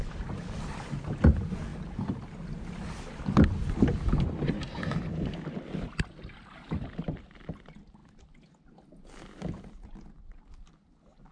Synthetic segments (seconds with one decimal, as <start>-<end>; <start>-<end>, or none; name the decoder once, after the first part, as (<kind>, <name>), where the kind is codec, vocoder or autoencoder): none